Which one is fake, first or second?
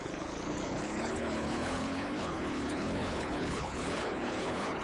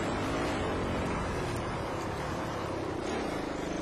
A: first